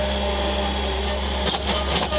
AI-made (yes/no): no